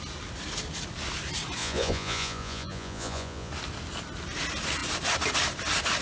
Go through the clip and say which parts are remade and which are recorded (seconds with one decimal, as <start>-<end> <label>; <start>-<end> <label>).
0.0-1.6 recorded; 1.6-3.5 remade; 3.5-6.0 recorded